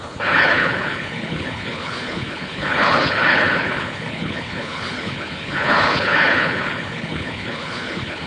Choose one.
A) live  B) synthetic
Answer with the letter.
B